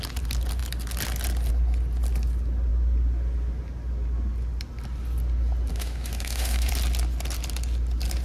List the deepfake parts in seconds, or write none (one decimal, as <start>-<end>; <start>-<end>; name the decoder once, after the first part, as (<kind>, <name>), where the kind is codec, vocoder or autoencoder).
5.7-6.7 (autoencoder, DAC-VAE)